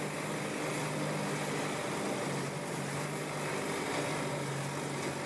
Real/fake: real